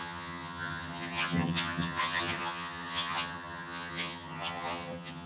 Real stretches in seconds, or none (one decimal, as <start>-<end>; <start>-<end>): none